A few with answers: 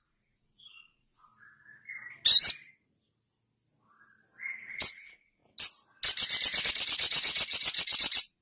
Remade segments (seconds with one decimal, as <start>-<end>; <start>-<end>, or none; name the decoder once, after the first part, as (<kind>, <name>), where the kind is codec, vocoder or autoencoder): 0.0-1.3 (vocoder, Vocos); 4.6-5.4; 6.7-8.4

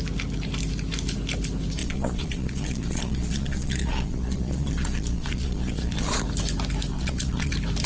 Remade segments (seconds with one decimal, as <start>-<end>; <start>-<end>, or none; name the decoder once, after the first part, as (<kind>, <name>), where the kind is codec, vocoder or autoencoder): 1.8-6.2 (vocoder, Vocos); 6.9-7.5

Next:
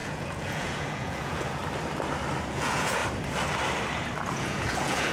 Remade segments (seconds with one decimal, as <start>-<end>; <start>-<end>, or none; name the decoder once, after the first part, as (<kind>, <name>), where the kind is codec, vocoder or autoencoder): 0.0-1.6 (vocoder, Vocos); 2.5-3.0; 4.3-5.1

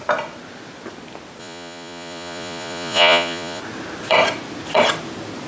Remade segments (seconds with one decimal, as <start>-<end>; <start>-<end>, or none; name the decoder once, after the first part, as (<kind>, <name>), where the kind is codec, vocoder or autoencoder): 1.4-3.6 (vocoder, Vocos)

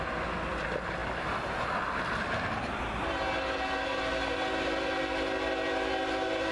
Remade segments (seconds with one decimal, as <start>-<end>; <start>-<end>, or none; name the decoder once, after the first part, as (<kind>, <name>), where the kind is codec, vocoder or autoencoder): none

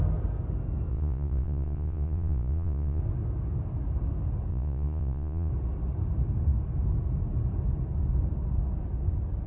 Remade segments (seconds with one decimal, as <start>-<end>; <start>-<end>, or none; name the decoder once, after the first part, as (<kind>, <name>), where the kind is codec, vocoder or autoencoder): 0.9-3.0 (vocoder, Vocos); 4.5-5.5